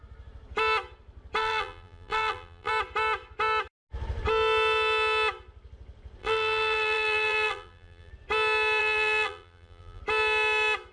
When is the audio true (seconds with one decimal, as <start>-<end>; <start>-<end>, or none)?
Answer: 0.0-1.4; 2.7-6.2; 8.1-8.8; 10.0-10.9